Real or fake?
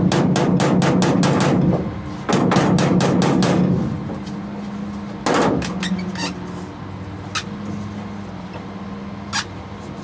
real